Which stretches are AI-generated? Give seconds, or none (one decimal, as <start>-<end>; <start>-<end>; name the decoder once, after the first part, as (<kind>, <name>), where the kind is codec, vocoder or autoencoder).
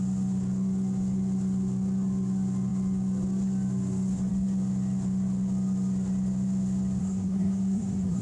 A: 7.0-8.2 (codec, SNAC)